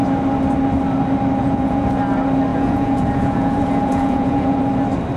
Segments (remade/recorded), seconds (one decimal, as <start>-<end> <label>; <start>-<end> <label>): 0.0-1.4 recorded; 1.4-1.9 remade; 1.9-2.5 recorded; 2.5-4.6 remade; 4.6-5.2 recorded

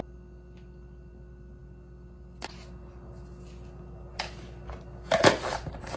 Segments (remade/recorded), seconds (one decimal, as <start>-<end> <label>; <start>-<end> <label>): 0.0-6.0 recorded

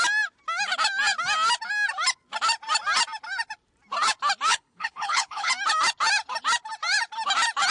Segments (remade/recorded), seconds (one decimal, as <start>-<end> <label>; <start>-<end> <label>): 0.0-4.5 recorded; 4.5-5.5 remade; 5.5-7.7 recorded

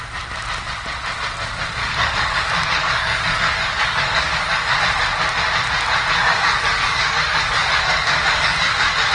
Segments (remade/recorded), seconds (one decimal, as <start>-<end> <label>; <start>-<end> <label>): 0.0-1.8 recorded; 1.8-4.8 remade; 4.8-6.2 recorded; 6.2-9.1 remade

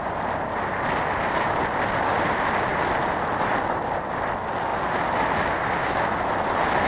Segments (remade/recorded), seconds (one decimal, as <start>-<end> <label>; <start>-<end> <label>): 0.0-6.9 recorded

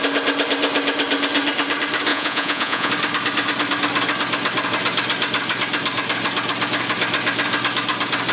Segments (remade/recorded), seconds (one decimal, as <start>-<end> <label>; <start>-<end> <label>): 0.0-2.1 recorded; 2.1-2.9 remade; 2.9-8.3 recorded

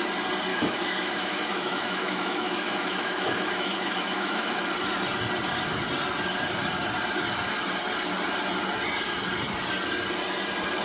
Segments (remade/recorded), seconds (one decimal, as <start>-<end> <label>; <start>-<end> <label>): 0.0-0.5 recorded; 0.5-4.6 remade; 4.6-10.8 recorded

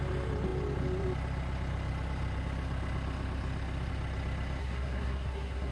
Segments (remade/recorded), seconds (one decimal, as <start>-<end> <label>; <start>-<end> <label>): 0.0-4.6 recorded; 4.6-5.7 remade